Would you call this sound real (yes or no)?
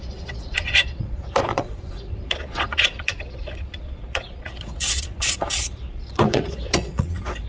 no